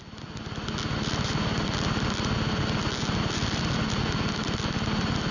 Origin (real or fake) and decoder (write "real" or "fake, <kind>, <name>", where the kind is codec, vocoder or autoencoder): real